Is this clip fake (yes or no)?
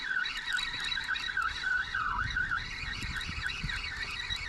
no